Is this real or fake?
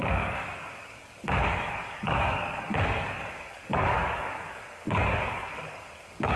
fake